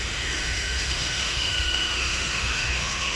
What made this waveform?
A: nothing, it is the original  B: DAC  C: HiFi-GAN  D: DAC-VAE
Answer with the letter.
D